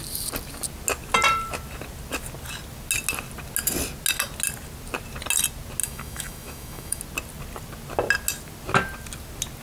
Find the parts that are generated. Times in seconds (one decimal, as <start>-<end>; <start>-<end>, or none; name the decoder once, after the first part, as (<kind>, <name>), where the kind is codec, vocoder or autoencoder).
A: 5.8-7.0 (autoencoder, DAC-VAE)